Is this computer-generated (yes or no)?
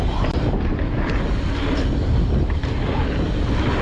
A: no